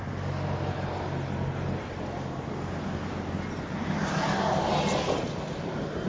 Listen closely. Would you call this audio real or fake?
real